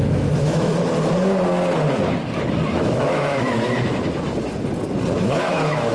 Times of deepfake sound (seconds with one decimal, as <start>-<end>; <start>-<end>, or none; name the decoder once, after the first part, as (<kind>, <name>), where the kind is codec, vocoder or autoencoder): 0.0-0.7 (autoencoder, DAC-VAE); 2.7-3.9; 5.2-5.9